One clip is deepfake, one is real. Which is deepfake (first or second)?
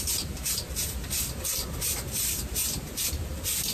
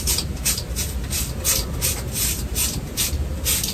first